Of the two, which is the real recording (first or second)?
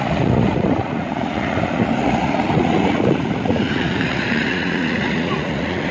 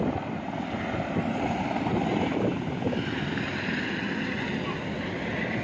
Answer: second